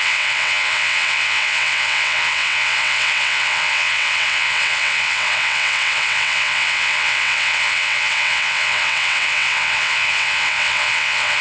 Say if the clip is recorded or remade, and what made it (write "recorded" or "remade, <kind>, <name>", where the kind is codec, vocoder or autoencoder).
remade, vocoder, WaveNeXt